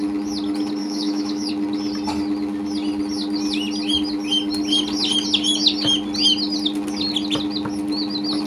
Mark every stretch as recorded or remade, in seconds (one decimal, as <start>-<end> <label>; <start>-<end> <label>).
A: 0.0-0.8 recorded; 0.8-1.5 remade; 1.5-8.5 recorded